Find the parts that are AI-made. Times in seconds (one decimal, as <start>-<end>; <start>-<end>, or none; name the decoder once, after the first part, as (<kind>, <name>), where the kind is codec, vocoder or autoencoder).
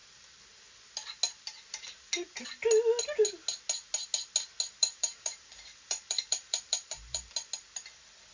4.8-7.3 (vocoder, BigVGAN v2)